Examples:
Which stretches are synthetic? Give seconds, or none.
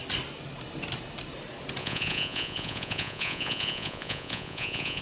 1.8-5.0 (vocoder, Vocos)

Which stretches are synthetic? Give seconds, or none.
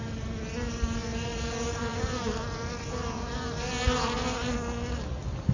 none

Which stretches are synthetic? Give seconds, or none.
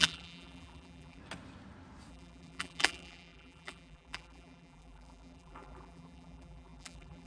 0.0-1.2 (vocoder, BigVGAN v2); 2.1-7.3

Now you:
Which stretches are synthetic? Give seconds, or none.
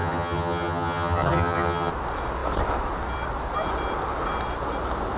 0.0-1.9 (vocoder, HiFi-GAN)